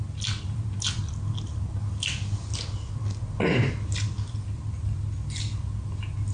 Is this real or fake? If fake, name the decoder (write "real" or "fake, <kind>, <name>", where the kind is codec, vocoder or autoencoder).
real